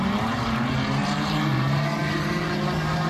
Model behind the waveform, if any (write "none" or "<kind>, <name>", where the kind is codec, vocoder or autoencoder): vocoder, BigVGAN v2